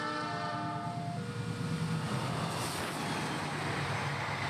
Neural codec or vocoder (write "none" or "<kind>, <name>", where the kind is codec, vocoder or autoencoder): none